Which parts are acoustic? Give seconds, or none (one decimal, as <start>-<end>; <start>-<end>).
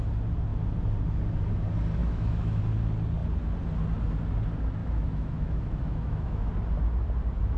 0.0-2.0; 2.6-4.8; 6.5-7.6